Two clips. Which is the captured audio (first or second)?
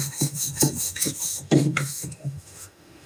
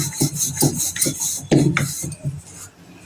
second